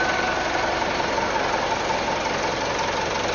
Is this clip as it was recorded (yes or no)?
yes